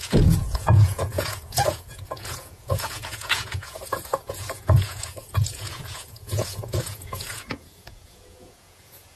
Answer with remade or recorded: remade